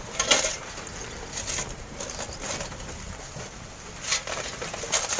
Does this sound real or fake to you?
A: real